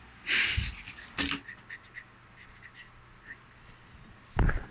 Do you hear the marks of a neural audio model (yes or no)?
no